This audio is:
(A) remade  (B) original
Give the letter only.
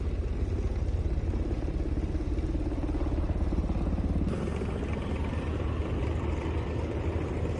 B